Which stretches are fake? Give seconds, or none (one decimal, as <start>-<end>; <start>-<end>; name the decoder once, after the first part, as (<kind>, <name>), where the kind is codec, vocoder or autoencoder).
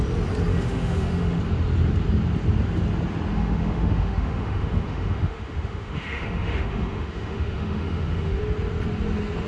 0.5-1.4 (autoencoder, DAC-VAE); 3.3-8.4